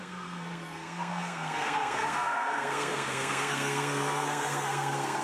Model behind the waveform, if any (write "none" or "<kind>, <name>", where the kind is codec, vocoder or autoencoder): codec, SNAC